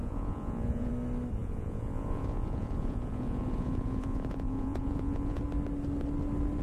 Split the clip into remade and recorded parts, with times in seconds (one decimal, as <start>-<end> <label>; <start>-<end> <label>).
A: 0.0-0.9 remade; 0.9-1.4 recorded; 1.4-5.4 remade; 5.4-6.6 recorded